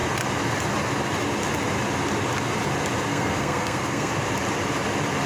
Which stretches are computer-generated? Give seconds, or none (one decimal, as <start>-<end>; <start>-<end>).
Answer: 3.1-4.1